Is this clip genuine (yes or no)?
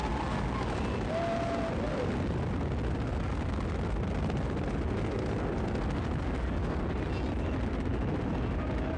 yes